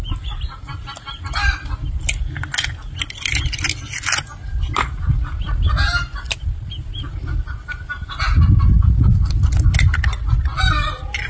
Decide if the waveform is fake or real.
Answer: real